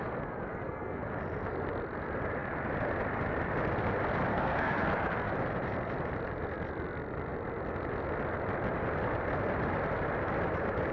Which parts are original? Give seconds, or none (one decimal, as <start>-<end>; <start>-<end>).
0.0-0.5; 1.1-4.3; 5.3-10.9